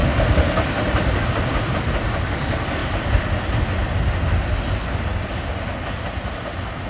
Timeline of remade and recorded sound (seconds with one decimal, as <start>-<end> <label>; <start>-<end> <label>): 0.0-2.3 remade; 2.3-6.9 recorded